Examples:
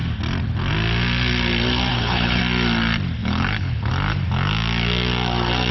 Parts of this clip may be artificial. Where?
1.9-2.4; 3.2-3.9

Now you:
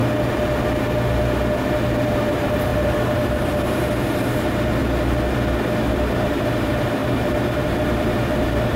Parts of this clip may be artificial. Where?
2.1-4.8; 5.9-8.8

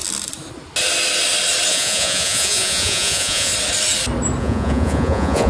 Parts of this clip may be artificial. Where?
1.7-3.5; 4.4-5.5

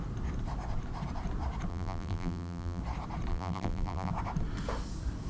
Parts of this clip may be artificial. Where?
1.7-2.8; 3.3-4.1

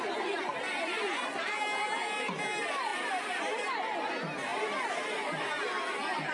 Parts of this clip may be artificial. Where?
none

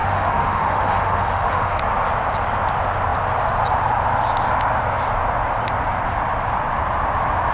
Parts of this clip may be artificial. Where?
0.0-1.8